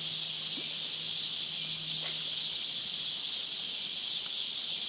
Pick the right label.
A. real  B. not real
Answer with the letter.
A